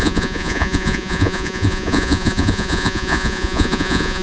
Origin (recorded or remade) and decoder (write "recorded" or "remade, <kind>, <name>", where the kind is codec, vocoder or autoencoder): remade, vocoder, Vocos